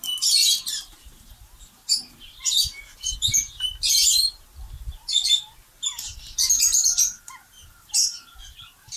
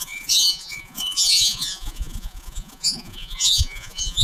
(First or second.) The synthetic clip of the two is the second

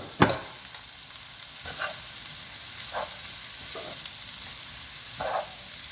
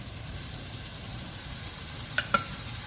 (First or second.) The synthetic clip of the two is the second